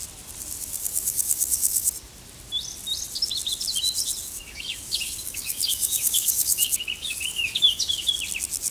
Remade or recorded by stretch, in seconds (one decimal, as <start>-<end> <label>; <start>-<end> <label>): 0.0-0.6 recorded; 0.6-1.9 remade; 1.9-4.2 recorded; 4.2-8.1 remade; 8.1-8.7 recorded